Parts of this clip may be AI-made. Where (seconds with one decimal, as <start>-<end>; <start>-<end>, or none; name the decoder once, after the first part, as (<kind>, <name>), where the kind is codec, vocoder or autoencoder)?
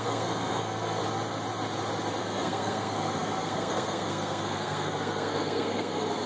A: 0.0-1.0 (codec, SNAC); 2.2-6.3